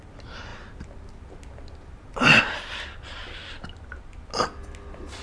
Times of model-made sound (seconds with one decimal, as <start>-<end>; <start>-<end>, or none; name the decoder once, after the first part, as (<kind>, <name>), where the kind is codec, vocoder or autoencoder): none